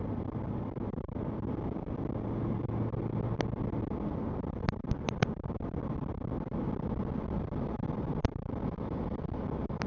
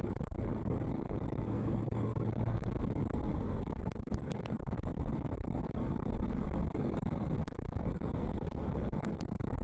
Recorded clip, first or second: first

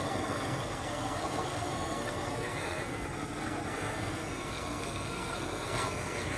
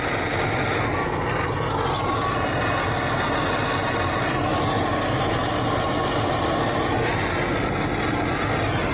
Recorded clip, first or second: second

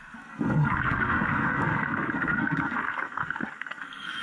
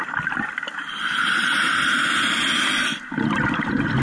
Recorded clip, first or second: second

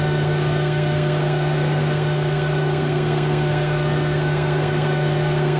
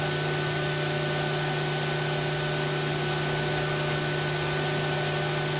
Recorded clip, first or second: second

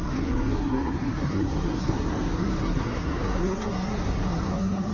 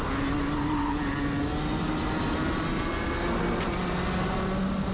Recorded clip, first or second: second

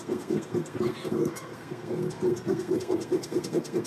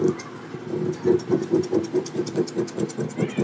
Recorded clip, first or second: second